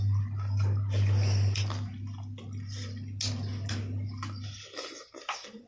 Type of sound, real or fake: real